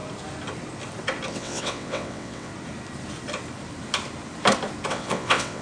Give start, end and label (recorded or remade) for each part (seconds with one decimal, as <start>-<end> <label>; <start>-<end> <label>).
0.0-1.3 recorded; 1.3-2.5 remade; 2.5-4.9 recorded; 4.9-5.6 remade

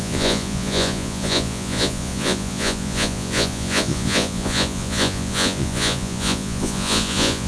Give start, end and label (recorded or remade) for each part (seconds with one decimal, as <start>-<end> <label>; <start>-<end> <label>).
0.0-7.5 remade

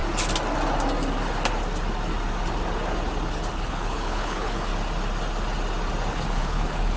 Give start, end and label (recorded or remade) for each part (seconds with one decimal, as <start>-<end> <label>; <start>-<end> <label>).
0.0-3.5 recorded; 3.5-4.7 remade; 4.7-6.1 recorded; 6.1-7.0 remade